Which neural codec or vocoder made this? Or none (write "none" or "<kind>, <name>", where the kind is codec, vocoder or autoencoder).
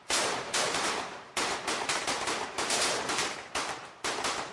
vocoder, BigVGAN v2